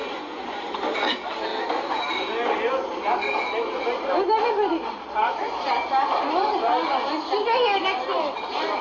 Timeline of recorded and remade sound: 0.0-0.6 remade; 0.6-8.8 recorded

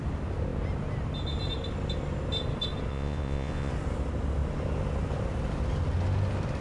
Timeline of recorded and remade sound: 0.0-2.9 recorded; 2.9-3.7 remade; 3.7-6.6 recorded

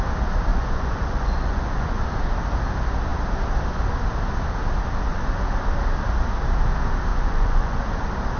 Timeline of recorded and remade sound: 0.0-0.5 recorded; 0.5-2.0 remade; 2.0-7.1 recorded; 7.1-7.8 remade; 7.8-8.4 recorded

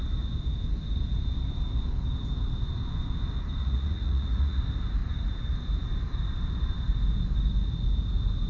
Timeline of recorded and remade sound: 0.0-3.6 recorded; 3.6-4.6 remade; 4.6-8.5 recorded

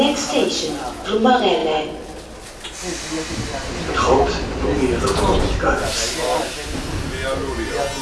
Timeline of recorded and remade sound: 0.0-8.0 recorded